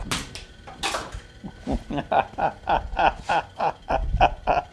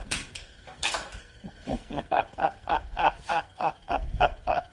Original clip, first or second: first